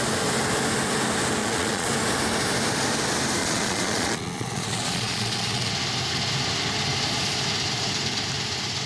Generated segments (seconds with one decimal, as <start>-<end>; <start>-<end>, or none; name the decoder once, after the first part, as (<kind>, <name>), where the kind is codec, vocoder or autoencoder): 1.4-1.9 (vocoder, Vocos); 3.4-5.7